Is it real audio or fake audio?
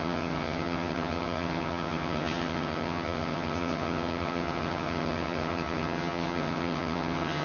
fake